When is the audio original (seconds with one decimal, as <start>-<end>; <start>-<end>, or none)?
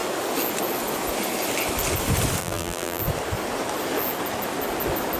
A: 0.0-2.4; 3.0-5.2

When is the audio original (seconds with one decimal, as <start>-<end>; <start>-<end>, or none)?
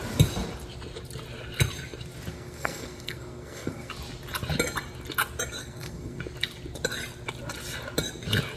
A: 0.0-2.3; 3.9-5.6; 6.2-8.6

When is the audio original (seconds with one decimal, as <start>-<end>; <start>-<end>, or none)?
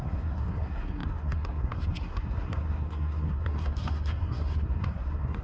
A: none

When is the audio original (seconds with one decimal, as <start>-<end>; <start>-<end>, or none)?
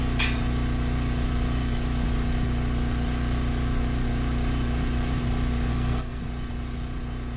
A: 0.0-5.7; 6.2-7.4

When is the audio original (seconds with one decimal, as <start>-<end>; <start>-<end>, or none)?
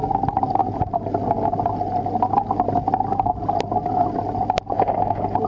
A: 0.0-5.5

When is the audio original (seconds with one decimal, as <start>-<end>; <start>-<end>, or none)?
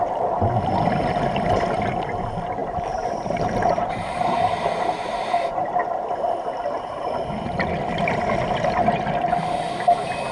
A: 0.0-2.6; 4.5-10.3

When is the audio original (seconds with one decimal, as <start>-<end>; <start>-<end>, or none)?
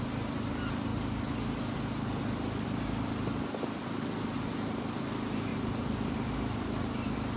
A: 0.0-5.5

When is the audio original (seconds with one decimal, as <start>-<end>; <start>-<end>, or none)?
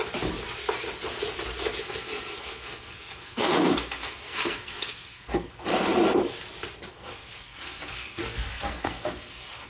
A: 0.0-1.8; 5.7-6.9